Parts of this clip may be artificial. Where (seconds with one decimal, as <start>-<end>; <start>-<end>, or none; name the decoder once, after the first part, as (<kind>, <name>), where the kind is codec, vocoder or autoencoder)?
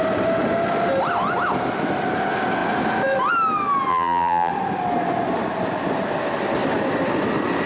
3.9-4.5 (vocoder, BigVGAN v2)